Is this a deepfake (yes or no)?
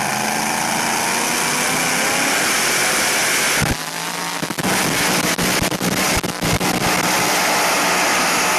no